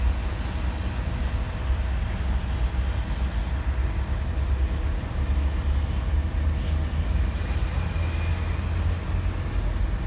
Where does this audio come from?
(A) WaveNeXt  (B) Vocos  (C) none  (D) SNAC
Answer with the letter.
C